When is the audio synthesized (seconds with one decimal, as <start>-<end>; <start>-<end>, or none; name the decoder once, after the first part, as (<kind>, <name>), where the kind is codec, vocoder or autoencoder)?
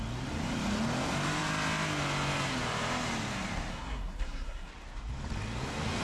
3.7-4.7 (codec, SNAC)